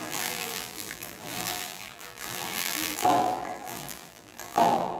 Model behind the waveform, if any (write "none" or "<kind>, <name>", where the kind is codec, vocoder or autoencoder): vocoder, BigVGAN v2